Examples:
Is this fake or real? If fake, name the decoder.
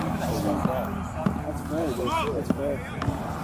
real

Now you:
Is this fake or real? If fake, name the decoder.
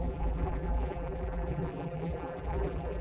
fake, vocoder, BigVGAN v2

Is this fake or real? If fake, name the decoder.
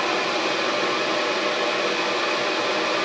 real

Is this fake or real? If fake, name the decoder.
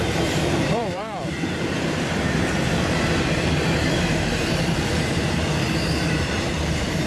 fake, vocoder, BigVGAN v2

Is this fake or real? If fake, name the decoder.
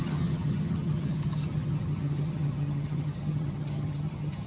fake, vocoder, HiFi-GAN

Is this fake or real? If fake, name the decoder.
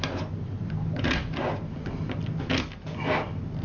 real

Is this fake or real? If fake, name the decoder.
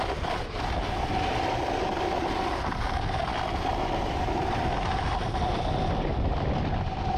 real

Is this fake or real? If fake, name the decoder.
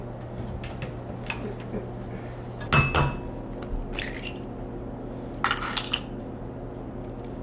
real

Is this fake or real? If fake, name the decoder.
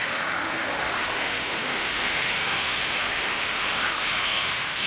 fake, autoencoder, DAC-VAE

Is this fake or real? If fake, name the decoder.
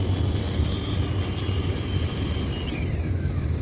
real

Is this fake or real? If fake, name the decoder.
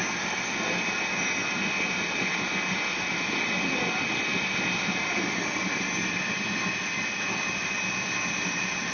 real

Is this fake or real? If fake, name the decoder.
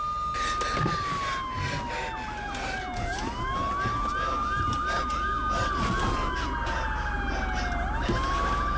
real